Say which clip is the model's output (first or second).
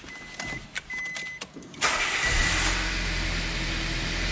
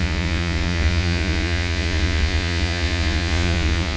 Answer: second